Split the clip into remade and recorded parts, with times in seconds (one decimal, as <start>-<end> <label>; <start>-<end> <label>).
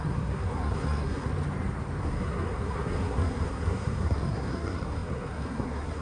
0.0-1.3 remade; 1.3-2.0 recorded; 2.0-6.0 remade